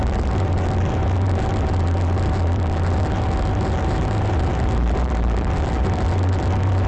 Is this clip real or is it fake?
fake